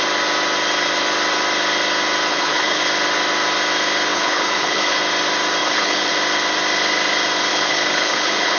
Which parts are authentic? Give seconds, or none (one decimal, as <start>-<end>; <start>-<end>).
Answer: 0.0-2.3; 2.8-4.1; 5.0-5.6; 6.1-7.5